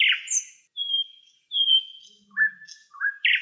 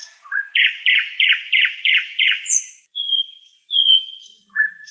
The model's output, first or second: second